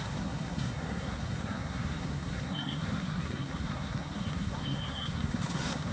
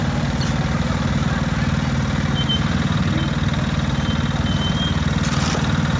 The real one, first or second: second